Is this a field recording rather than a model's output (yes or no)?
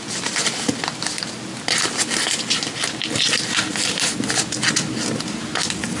yes